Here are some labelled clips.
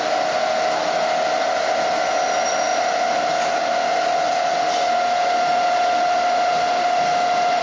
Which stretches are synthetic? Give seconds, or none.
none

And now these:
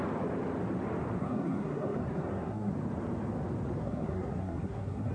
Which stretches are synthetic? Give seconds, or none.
1.2-2.7 (codec, SNAC); 3.8-5.1